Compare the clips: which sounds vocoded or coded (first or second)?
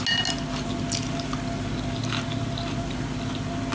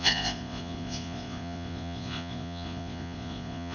second